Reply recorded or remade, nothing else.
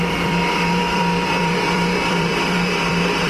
remade